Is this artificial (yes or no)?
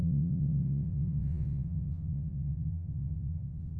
yes